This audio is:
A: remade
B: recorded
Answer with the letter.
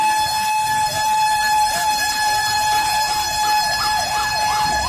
A